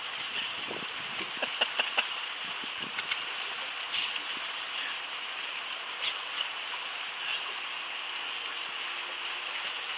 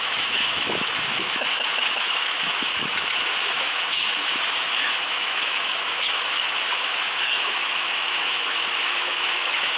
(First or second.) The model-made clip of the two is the second